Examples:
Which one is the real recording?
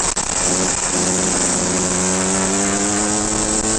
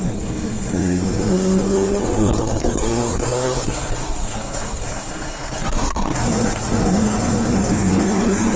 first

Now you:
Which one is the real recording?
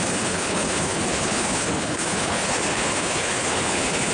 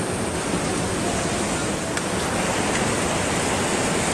second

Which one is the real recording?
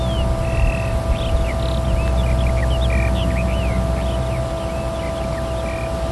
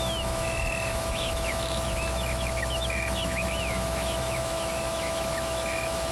first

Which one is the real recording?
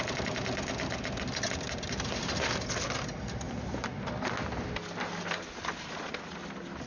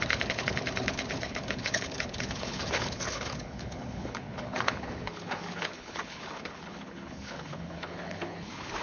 first